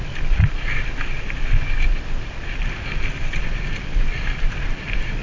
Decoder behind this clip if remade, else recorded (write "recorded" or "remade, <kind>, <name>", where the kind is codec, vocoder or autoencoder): recorded